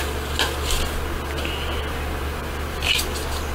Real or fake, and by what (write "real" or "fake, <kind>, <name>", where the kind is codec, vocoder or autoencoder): real